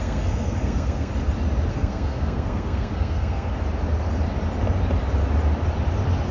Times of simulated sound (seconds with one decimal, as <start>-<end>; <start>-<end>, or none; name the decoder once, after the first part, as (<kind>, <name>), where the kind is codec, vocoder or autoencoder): 0.0-1.1 (codec, SNAC); 1.7-3.5